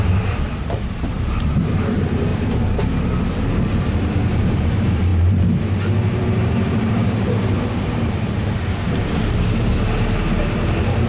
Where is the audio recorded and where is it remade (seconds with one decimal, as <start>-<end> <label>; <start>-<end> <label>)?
0.0-2.3 remade; 2.3-3.2 recorded; 3.2-9.7 remade; 9.7-10.4 recorded; 10.4-11.1 remade